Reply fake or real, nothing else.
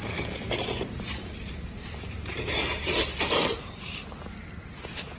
fake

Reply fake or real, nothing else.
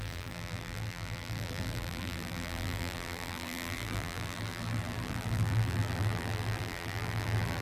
fake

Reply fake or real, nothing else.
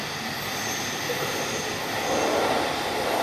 real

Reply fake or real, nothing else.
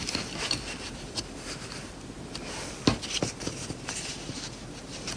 real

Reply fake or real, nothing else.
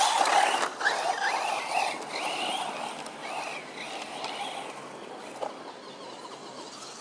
real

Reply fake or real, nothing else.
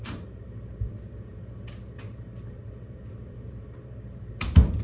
fake